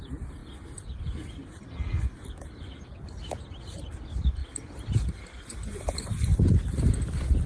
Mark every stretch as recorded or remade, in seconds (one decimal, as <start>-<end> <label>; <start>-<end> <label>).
0.0-7.5 recorded